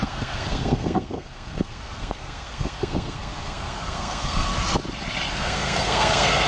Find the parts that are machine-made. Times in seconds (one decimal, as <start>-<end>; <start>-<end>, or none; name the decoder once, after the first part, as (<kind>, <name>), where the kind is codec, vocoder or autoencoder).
0.0-4.5 (codec, SNAC); 5.3-6.5